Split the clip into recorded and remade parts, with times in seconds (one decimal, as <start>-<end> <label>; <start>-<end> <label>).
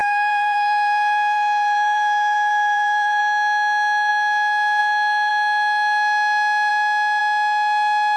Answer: 0.0-3.2 remade; 3.2-8.2 recorded